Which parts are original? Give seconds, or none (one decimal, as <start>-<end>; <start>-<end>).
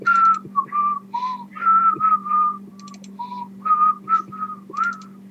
0.0-1.5; 2.7-5.3